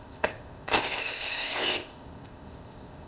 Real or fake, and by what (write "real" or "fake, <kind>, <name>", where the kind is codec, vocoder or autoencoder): fake, codec, ZipCodec